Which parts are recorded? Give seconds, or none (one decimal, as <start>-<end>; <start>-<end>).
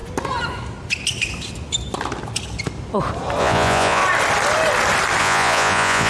0.0-3.4; 4.0-5.2